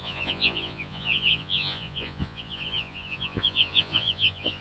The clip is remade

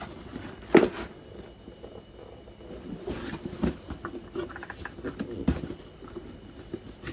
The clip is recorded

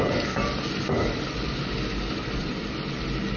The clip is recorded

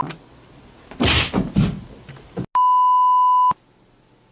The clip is recorded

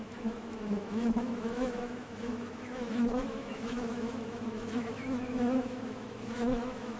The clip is remade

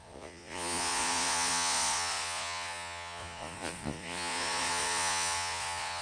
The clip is remade